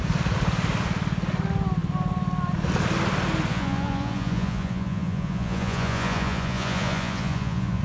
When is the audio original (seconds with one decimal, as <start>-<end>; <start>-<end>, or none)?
0.0-3.5